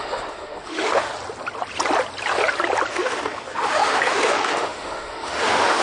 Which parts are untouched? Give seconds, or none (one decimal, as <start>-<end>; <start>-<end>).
1.1-2.9